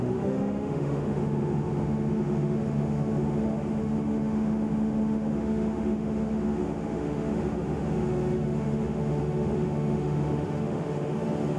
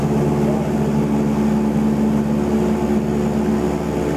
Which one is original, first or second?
second